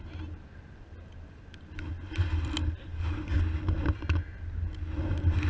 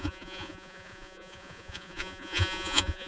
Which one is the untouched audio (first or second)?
first